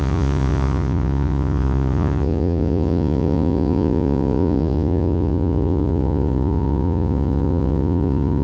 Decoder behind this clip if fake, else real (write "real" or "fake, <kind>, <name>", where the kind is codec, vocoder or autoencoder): fake, vocoder, Vocos